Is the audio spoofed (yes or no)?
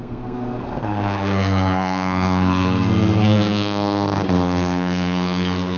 yes